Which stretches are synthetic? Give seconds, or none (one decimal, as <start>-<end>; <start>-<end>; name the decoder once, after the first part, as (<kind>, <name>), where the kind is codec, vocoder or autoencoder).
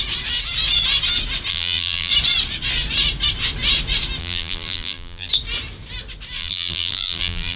1.5-2.1 (vocoder, BigVGAN v2); 4.2-5.3; 6.4-7.6